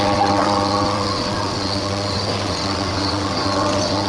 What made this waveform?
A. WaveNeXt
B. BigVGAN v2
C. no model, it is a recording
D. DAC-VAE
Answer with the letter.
A